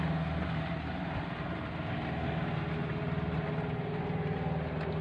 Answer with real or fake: real